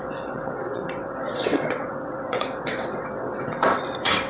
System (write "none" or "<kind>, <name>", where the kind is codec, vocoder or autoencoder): vocoder, WaveNeXt